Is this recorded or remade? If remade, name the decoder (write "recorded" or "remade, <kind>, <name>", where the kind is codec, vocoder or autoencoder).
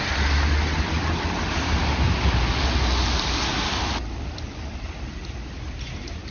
recorded